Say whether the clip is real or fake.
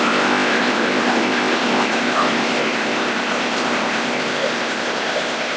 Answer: fake